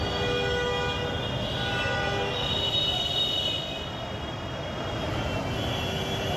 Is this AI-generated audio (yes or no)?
no